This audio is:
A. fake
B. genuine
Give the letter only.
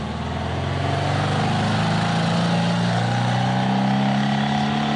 B